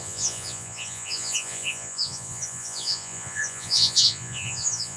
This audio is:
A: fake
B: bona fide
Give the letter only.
A